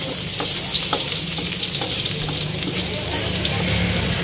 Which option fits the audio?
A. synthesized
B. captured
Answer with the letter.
B